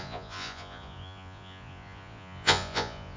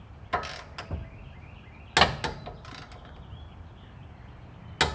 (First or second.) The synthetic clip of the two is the first